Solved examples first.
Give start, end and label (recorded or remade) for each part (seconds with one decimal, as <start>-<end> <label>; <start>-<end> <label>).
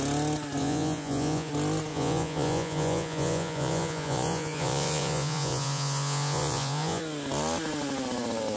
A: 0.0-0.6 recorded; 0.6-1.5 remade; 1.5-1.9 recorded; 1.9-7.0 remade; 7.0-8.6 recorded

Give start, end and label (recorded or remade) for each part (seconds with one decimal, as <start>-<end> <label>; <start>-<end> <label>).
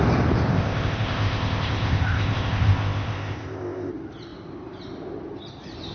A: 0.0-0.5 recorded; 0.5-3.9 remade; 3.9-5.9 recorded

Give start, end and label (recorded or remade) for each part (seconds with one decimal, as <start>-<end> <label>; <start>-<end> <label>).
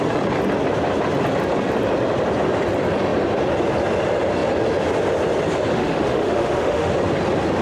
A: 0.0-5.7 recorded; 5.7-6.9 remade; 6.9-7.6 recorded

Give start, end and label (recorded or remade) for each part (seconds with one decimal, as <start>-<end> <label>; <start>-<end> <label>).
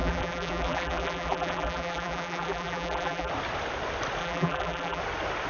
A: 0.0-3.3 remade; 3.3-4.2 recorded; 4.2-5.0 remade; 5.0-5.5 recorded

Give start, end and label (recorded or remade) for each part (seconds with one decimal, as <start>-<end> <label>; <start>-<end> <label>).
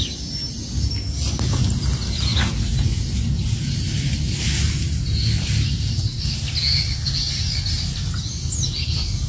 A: 0.0-9.3 recorded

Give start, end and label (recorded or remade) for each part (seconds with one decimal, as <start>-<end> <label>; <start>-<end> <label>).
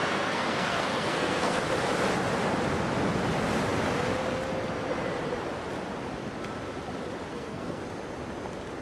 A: 0.0-1.6 remade; 1.6-7.3 recorded; 7.3-7.8 remade; 7.8-8.8 recorded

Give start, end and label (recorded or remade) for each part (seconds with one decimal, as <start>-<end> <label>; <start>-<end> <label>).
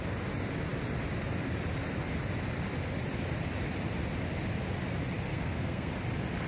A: 0.0-5.3 recorded; 5.3-5.9 remade; 5.9-6.5 recorded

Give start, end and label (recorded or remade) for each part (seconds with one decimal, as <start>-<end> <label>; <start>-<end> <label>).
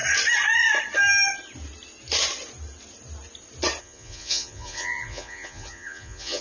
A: 0.0-3.8 recorded; 3.8-6.4 remade